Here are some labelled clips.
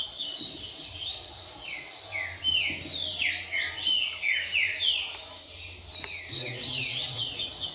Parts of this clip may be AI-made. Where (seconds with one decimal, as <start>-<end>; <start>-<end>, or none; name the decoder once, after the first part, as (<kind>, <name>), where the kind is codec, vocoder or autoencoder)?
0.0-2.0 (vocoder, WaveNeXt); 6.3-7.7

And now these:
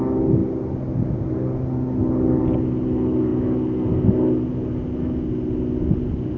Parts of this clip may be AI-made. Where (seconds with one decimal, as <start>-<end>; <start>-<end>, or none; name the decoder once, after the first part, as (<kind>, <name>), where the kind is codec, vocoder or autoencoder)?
none

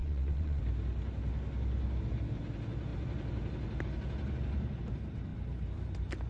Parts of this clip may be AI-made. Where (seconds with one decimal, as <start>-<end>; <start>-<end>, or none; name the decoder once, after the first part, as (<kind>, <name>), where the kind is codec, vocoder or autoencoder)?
0.0-0.6 (vocoder, WaveNeXt)

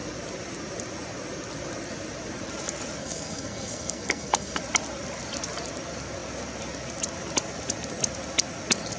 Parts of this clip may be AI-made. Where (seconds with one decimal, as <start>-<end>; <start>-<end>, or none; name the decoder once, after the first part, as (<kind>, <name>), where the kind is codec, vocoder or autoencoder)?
3.0-4.6 (codec, SNAC)